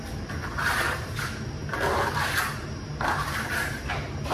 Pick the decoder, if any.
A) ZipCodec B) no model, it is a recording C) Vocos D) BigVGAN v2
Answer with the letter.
B